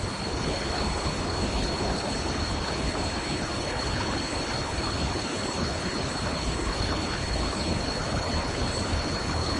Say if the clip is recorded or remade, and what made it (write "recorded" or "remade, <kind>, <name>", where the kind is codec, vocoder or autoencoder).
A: remade, codec, HILCodec